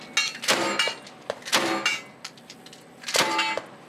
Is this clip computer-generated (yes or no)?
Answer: no